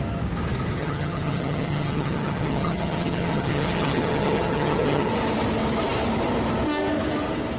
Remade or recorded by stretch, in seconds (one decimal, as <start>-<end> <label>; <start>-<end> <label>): 0.0-0.8 recorded; 0.8-5.1 remade; 5.1-7.6 recorded